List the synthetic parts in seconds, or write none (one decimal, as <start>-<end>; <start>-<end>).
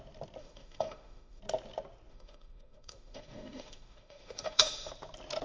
0.4-1.4; 2.1-4.9